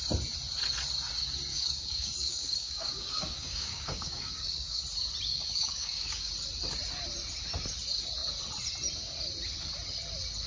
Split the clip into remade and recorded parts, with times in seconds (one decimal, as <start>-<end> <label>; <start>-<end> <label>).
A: 0.0-1.5 recorded; 1.5-4.8 remade; 4.8-5.3 recorded; 5.3-6.3 remade; 6.3-10.5 recorded